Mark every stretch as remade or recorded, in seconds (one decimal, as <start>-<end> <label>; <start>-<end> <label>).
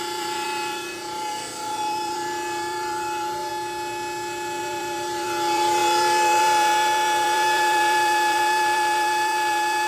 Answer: 0.0-3.5 remade; 3.5-4.6 recorded; 4.6-9.9 remade